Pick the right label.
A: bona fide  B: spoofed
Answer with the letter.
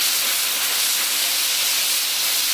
A